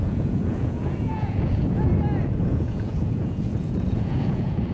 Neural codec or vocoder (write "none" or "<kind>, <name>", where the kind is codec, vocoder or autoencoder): vocoder, Vocos